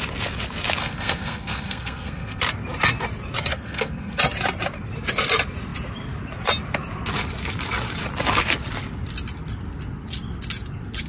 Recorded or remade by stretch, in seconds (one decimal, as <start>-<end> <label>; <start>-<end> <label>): 0.0-0.8 recorded; 0.8-2.4 remade; 2.4-3.5 recorded; 3.5-4.2 remade; 4.2-11.1 recorded